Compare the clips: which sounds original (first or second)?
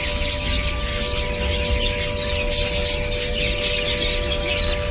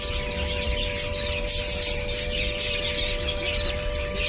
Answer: first